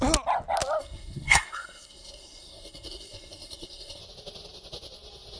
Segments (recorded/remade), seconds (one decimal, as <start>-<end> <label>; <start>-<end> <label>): 0.0-0.8 recorded; 0.8-4.0 remade; 4.0-5.4 recorded